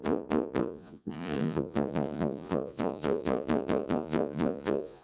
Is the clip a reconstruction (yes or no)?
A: yes